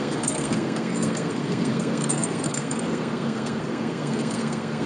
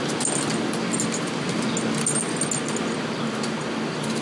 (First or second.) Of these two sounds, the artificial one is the first